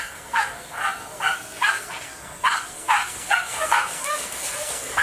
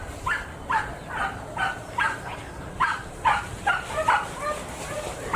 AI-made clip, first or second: first